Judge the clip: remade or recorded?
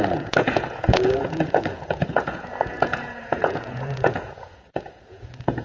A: remade